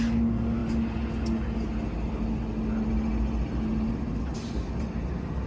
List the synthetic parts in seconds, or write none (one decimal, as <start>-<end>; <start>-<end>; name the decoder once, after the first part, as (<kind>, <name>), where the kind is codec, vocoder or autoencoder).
none